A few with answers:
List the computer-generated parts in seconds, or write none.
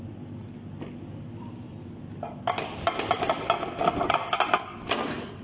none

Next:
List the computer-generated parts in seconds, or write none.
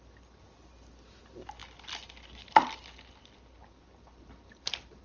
none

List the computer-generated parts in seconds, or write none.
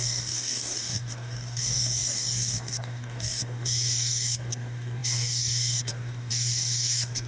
0.0-7.3 (codec, DAC)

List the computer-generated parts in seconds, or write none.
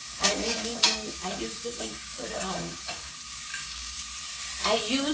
0.0-3.1 (codec, DAC); 3.5-4.0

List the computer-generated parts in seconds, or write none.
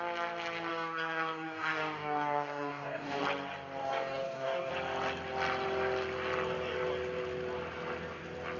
0.7-3.2 (codec, DAC); 3.8-4.7